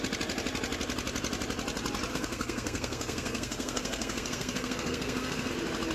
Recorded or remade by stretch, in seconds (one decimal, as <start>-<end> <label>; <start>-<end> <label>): 0.0-2.1 recorded; 2.1-5.5 remade; 5.5-5.9 recorded